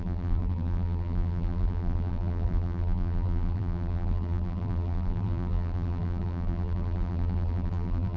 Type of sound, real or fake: fake